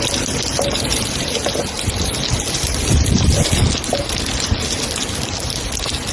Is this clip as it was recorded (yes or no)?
yes